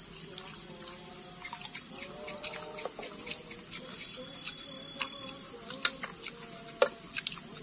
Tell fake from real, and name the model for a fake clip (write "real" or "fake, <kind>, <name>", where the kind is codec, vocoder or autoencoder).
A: real